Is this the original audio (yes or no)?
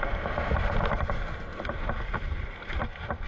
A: yes